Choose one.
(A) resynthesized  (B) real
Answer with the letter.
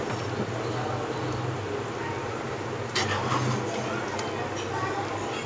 B